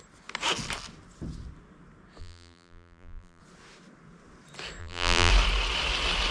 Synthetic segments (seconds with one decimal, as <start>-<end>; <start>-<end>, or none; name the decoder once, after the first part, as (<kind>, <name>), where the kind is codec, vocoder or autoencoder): 2.2-3.4 (vocoder, BigVGAN v2); 4.8-5.3